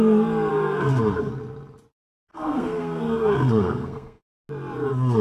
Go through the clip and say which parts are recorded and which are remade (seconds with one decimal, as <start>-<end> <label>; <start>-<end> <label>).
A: 0.0-0.5 recorded; 0.5-1.3 remade; 1.3-2.3 recorded; 2.3-4.3 remade; 4.3-5.2 recorded